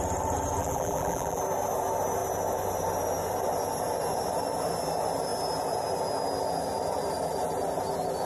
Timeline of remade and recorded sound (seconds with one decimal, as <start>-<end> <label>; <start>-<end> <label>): 0.0-0.6 recorded; 0.6-1.4 remade; 1.4-8.3 recorded